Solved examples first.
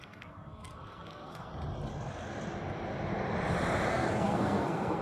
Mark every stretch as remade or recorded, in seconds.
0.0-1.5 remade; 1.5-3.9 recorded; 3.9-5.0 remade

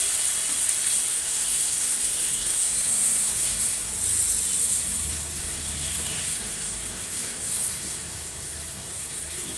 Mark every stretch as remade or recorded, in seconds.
0.0-1.1 recorded; 1.1-3.9 remade; 3.9-4.6 recorded; 4.6-9.6 remade

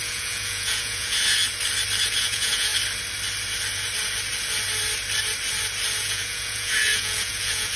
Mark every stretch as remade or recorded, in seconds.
0.0-1.4 remade; 1.4-2.0 recorded; 2.0-2.7 remade; 2.7-6.0 recorded; 6.0-7.8 remade

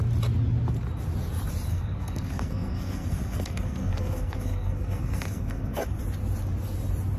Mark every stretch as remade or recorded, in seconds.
0.0-1.7 recorded; 1.7-6.0 remade; 6.0-7.2 recorded

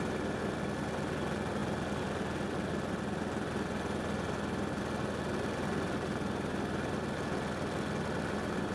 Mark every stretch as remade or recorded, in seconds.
0.0-8.7 recorded

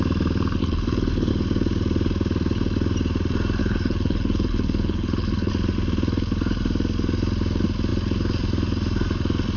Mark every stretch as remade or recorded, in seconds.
0.0-0.6 recorded; 0.6-1.3 remade; 1.3-3.6 recorded; 3.6-5.5 remade; 5.5-9.6 recorded

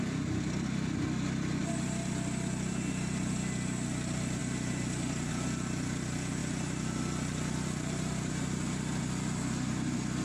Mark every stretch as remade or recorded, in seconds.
0.0-10.2 recorded

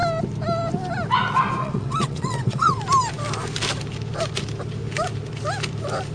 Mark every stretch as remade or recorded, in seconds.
0.0-1.6 recorded; 1.6-2.7 remade; 2.7-6.1 recorded